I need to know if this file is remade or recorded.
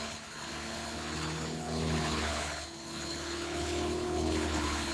remade